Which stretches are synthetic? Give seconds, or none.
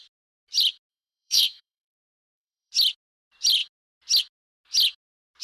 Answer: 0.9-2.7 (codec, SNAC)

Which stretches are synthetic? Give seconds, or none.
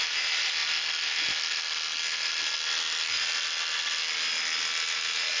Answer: none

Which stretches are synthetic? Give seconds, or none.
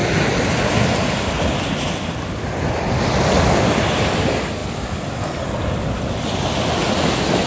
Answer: none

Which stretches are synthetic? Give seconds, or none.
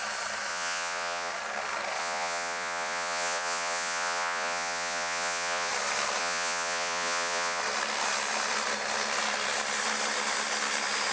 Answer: 0.5-1.3 (vocoder, Vocos); 2.0-5.7; 6.2-7.6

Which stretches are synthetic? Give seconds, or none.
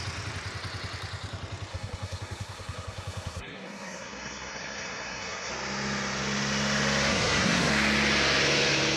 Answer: 1.7-5.5 (codec, SNAC); 7.1-7.7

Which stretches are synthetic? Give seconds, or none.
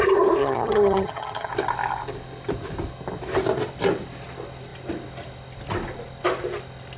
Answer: 0.4-1.5 (vocoder, HiFi-GAN)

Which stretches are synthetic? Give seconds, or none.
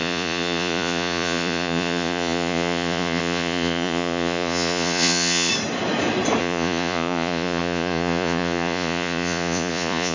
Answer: 0.0-5.5 (vocoder, Vocos); 6.4-10.1